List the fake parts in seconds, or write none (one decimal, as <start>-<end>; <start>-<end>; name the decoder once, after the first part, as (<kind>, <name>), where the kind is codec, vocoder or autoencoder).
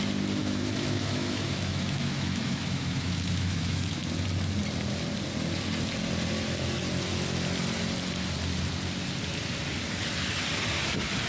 0.4-4.0 (autoencoder, DAC-VAE)